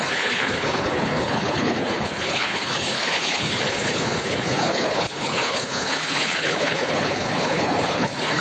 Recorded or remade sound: remade